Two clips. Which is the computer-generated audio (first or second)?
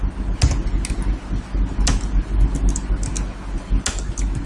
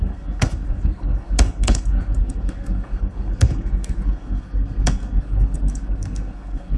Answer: second